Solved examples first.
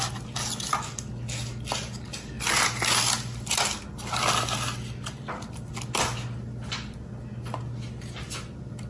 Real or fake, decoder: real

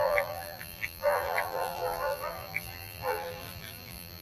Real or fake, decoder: fake, vocoder, BigVGAN v2